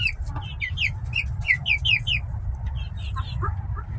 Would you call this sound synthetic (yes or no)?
no